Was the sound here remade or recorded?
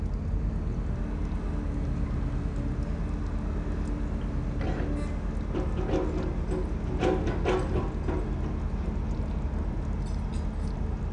recorded